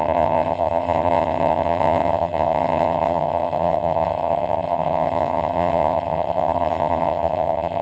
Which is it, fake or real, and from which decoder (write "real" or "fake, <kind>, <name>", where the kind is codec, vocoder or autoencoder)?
fake, vocoder, HiFi-GAN